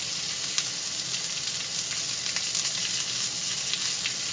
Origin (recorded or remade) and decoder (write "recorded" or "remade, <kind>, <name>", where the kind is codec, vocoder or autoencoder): recorded